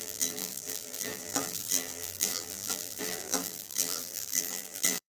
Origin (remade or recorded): remade